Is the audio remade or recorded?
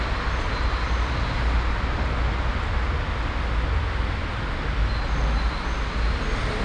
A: recorded